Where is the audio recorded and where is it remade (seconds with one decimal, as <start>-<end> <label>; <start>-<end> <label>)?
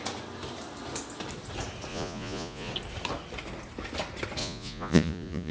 0.0-1.9 recorded; 1.9-2.7 remade; 2.7-4.4 recorded; 4.4-5.5 remade